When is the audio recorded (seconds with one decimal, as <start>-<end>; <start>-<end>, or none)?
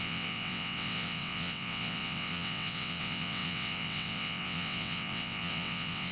none